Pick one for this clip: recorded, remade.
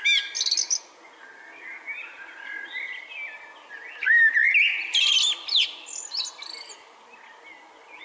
recorded